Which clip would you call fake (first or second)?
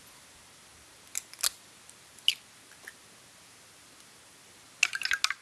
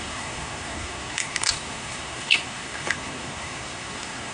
second